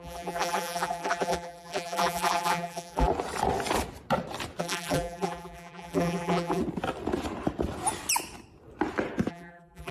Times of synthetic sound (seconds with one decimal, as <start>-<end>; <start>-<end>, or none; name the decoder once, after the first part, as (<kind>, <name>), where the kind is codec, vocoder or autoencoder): 0.0-3.1 (vocoder, BigVGAN v2); 4.6-6.6; 9.3-9.9